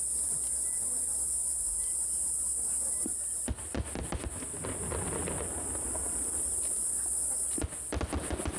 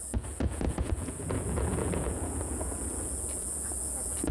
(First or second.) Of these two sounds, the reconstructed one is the second